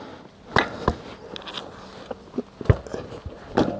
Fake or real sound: real